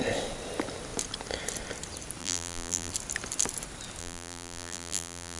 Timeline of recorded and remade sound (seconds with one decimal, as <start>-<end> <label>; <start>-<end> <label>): 0.0-2.2 recorded; 2.2-2.9 remade; 2.9-4.0 recorded; 4.0-5.4 remade